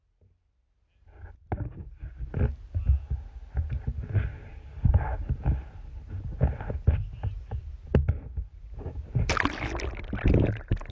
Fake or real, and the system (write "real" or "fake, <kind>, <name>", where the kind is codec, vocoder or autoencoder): real